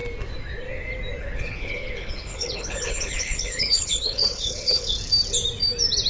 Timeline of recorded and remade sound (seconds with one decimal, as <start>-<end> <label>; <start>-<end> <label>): 0.0-1.2 recorded; 1.2-4.9 remade; 4.9-6.1 recorded